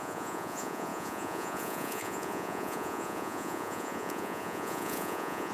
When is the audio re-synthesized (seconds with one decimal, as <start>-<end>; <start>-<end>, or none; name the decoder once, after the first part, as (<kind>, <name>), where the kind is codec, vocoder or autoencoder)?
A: 0.0-5.5 (vocoder, Vocos)